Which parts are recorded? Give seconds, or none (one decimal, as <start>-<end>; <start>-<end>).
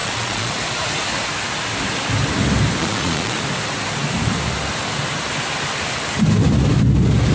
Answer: 0.5-2.8; 3.4-7.3